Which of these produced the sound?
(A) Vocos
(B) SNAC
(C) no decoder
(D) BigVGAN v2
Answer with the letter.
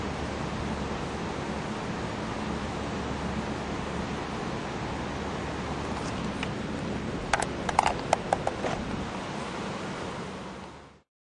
C